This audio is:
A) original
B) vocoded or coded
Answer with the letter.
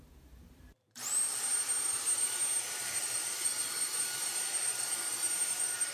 B